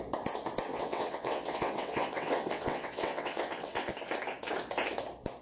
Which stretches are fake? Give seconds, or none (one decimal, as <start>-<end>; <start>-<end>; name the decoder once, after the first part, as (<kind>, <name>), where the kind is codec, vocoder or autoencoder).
0.7-3.9 (vocoder, WaveNeXt)